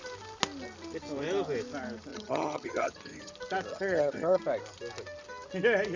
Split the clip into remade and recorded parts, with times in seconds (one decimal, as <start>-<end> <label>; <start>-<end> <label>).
0.0-2.1 recorded; 2.1-3.3 remade; 3.3-3.7 recorded; 3.7-4.4 remade; 4.4-6.0 recorded